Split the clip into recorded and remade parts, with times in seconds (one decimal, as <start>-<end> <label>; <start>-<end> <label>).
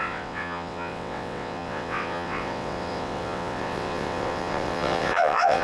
0.0-5.6 remade